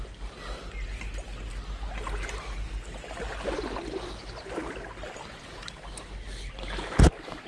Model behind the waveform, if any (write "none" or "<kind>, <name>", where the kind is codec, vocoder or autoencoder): none